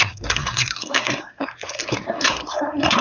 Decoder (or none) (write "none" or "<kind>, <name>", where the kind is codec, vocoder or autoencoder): codec, SNAC